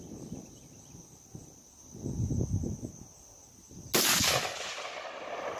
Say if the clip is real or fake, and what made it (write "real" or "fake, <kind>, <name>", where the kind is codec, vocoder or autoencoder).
real